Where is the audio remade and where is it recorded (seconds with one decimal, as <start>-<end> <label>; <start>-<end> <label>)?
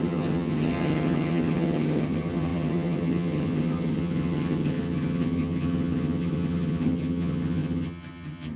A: 0.0-8.6 remade